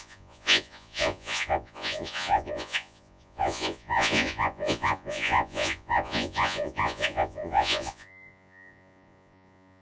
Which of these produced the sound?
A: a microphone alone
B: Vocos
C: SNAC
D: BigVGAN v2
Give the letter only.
B